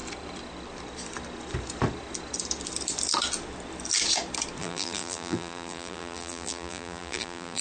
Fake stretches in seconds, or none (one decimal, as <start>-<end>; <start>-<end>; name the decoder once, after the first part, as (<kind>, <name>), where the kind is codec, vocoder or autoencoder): 4.6-7.6 (vocoder, BigVGAN v2)